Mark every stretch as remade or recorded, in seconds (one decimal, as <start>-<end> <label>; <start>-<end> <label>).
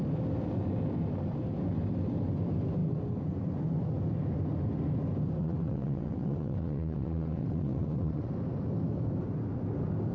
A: 0.0-5.4 recorded; 5.4-8.3 remade; 8.3-10.1 recorded